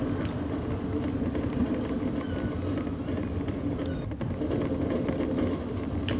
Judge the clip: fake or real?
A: real